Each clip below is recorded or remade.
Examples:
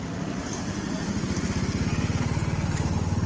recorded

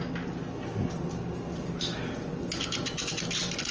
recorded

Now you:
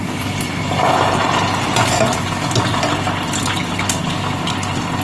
recorded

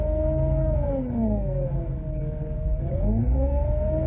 remade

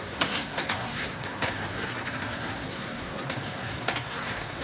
remade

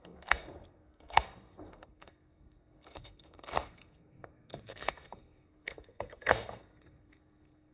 remade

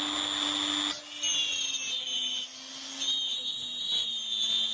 recorded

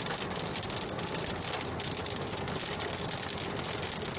recorded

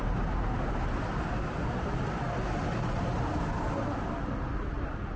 recorded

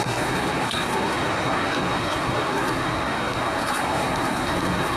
remade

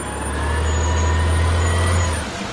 recorded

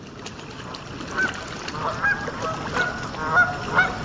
recorded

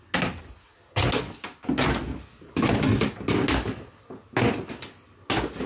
recorded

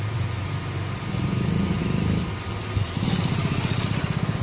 recorded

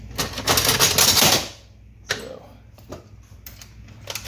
recorded